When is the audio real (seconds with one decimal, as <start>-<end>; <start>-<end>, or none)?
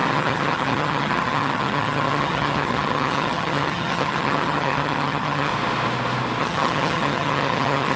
5.5-6.4